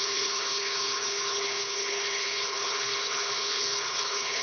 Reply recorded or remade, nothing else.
remade